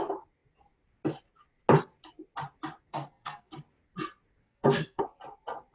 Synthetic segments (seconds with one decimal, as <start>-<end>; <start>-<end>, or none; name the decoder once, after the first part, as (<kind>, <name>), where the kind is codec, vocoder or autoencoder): 2.9-3.5 (codec, SNAC); 4.4-5.0